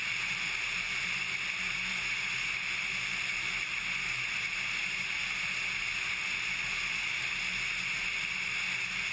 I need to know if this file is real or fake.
real